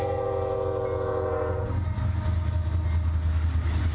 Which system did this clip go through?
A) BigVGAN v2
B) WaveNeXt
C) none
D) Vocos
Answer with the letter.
C